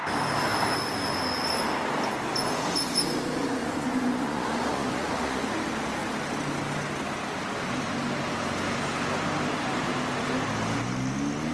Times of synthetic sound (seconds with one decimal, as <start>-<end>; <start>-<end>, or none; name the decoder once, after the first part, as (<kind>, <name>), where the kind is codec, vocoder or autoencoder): 3.6-5.4 (vocoder, Vocos)